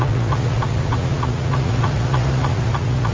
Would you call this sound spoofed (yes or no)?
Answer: yes